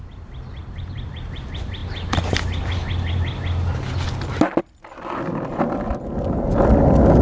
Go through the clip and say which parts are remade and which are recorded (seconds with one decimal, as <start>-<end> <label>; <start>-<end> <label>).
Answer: 0.0-0.6 recorded; 0.6-1.4 remade; 1.4-7.2 recorded